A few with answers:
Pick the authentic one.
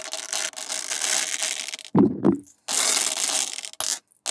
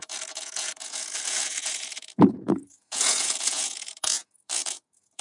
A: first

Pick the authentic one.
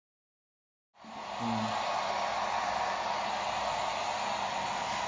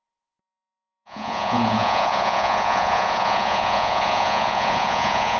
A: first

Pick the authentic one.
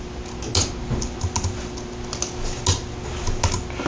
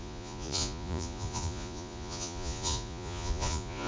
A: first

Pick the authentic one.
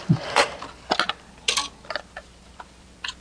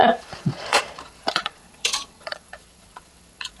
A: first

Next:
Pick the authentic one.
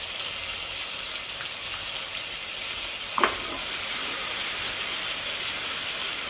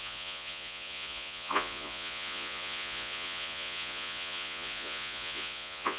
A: first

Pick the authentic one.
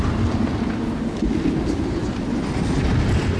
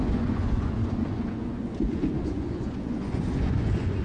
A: first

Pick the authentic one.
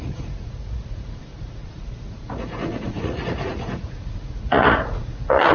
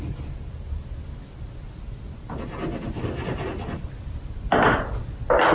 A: second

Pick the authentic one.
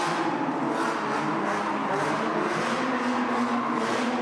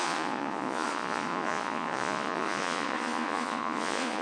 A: first